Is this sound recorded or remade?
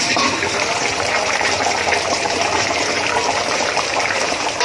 remade